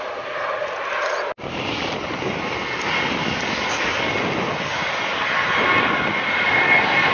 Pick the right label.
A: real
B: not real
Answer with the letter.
A